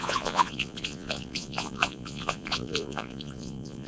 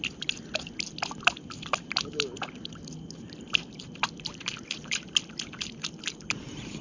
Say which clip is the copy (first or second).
first